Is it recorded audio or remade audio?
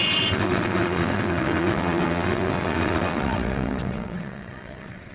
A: remade